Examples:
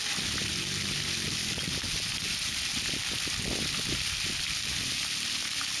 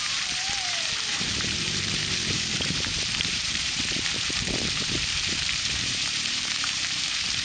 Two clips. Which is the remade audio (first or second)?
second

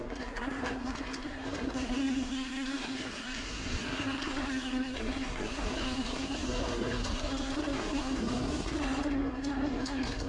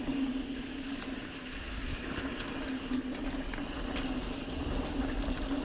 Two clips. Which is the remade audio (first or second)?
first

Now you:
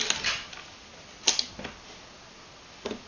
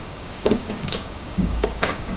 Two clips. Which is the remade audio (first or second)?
second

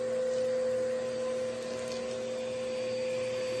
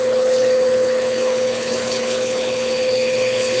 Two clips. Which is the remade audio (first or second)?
second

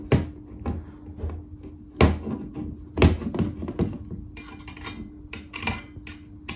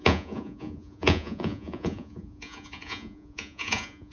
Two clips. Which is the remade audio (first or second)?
second